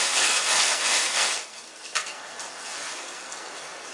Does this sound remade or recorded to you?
remade